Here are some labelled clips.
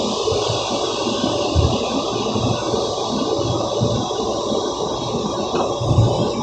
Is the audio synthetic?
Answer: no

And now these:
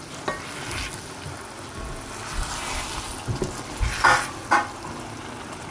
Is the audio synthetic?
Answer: no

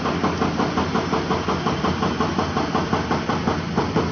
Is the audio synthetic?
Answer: no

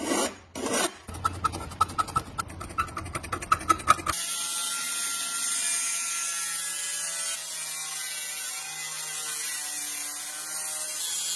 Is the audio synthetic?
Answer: no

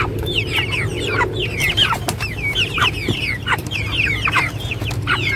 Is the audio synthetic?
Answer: yes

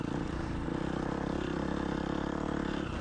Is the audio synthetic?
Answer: no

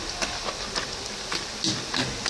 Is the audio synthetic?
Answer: no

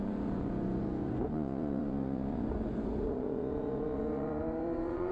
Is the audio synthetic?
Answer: yes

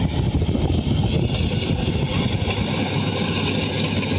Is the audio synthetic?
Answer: no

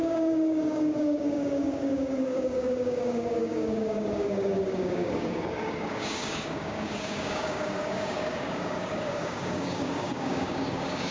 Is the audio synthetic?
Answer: yes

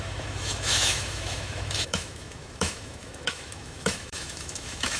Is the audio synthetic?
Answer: yes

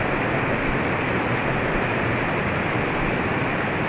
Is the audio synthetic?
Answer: no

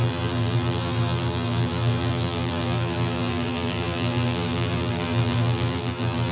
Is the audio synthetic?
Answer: yes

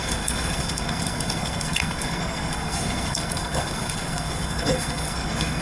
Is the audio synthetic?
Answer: yes